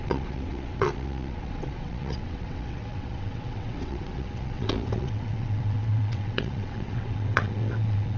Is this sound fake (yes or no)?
yes